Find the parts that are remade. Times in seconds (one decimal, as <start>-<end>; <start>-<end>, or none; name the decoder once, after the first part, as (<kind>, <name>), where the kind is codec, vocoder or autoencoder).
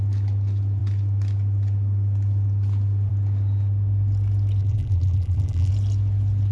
4.6-5.7 (vocoder, BigVGAN v2)